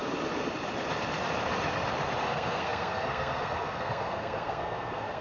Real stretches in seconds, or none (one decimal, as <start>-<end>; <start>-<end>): 0.0-2.2